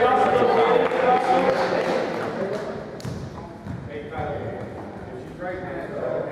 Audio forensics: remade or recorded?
recorded